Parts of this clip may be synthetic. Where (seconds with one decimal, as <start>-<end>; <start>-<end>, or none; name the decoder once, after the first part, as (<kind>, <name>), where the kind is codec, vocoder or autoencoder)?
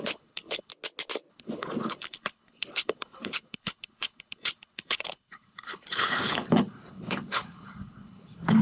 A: 0.0-0.7 (codec, HILCodec); 1.3-8.6